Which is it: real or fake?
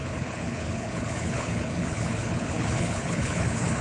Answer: fake